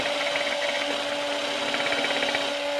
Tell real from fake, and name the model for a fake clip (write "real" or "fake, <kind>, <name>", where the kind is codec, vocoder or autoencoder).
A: real